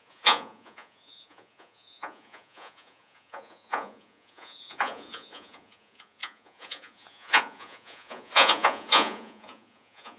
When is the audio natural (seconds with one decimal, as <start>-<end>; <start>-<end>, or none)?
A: none